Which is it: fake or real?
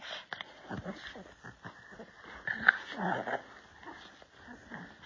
real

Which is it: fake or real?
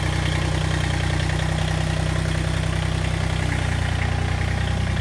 real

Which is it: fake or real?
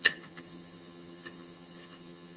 fake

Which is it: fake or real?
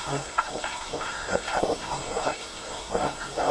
fake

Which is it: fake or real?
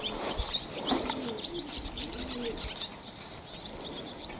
real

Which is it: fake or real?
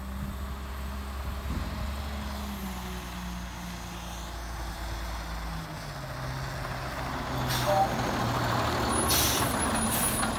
real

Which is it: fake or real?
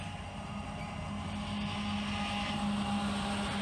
real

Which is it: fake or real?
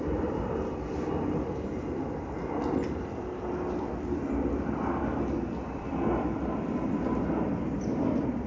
fake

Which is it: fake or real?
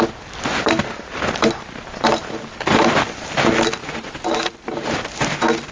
real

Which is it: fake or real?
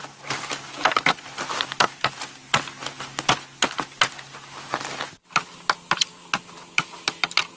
real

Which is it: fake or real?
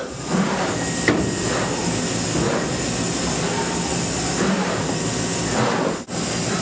real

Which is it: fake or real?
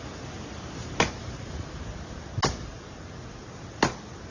real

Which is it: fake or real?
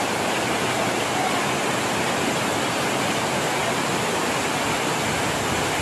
real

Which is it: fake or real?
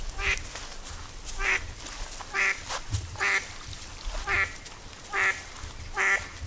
real